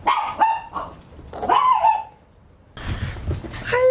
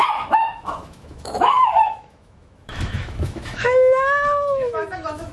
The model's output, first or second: second